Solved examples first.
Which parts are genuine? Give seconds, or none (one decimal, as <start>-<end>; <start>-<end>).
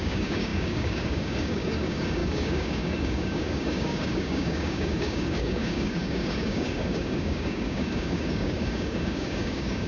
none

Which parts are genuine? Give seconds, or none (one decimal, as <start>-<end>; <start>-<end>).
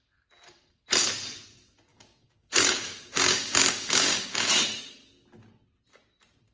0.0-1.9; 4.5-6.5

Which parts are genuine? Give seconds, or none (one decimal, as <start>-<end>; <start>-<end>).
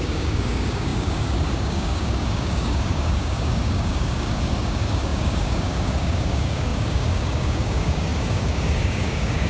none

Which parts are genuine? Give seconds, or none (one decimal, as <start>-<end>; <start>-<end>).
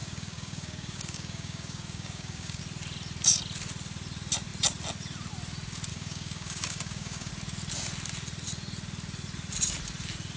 2.6-5.9; 7.3-10.4